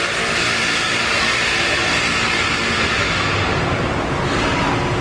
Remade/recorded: recorded